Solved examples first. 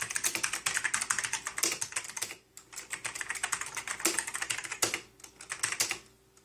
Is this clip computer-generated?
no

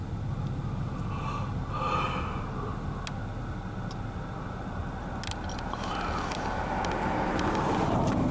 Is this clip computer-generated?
no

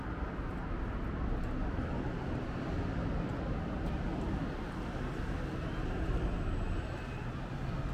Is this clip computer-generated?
no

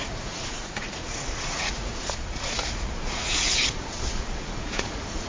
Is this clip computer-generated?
yes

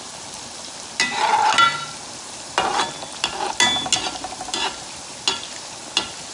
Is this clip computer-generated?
no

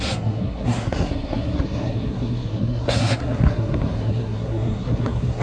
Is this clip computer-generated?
yes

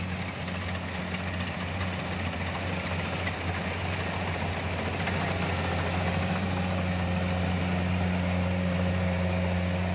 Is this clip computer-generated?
no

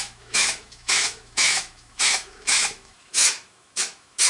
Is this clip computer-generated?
yes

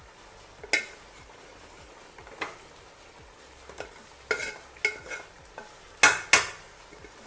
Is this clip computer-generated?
no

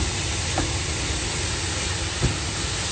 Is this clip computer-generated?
no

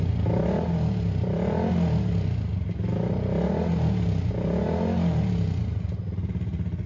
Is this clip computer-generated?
no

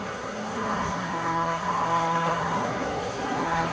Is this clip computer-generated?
yes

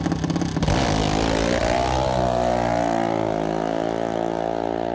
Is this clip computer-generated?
no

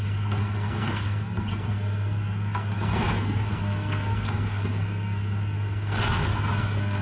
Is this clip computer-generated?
yes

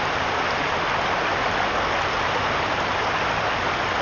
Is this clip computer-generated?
no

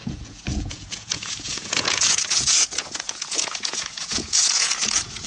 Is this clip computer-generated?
yes